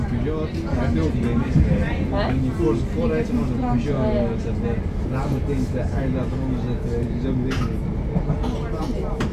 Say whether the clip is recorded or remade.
recorded